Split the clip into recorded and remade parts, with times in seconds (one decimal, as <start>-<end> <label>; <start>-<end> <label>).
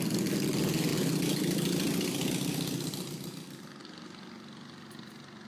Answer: 0.0-5.5 recorded